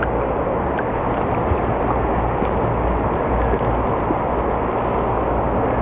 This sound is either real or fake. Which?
real